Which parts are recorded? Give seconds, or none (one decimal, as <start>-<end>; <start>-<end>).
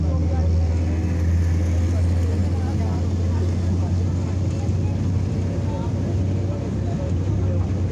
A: 0.0-7.9